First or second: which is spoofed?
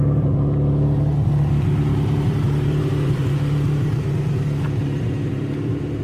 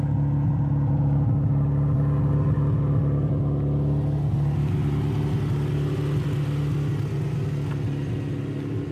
first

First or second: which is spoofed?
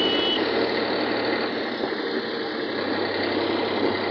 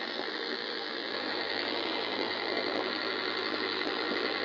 second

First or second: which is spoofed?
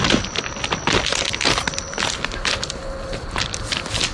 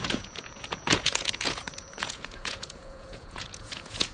second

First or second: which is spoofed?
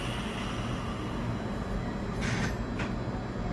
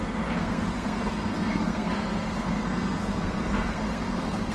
second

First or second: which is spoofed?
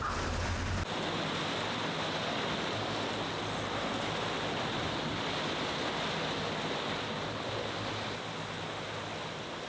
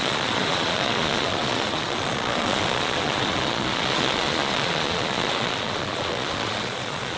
second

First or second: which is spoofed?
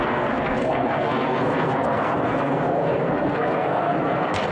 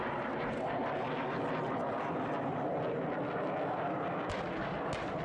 first